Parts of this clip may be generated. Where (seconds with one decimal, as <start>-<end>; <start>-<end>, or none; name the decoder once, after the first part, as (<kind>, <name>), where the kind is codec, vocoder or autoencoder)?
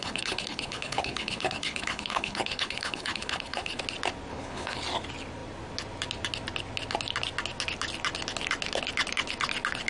0.0-3.8 (codec, HILCodec); 4.3-4.8